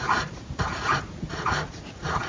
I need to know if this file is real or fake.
fake